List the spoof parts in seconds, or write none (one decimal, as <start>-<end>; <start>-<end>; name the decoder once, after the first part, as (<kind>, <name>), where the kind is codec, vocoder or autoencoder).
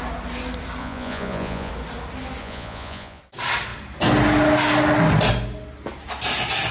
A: 0.8-1.7 (vocoder, Vocos); 2.4-3.2